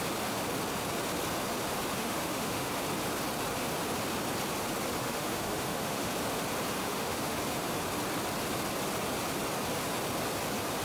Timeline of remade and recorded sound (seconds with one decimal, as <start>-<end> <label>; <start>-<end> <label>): 0.0-1.9 recorded; 1.9-2.7 remade; 2.7-5.0 recorded; 5.0-6.1 remade; 6.1-6.8 recorded; 6.8-7.4 remade; 7.4-10.8 recorded